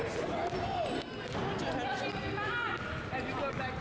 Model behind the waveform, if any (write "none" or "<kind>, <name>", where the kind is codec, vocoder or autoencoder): none